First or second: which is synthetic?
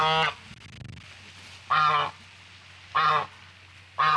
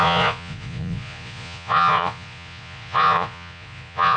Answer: second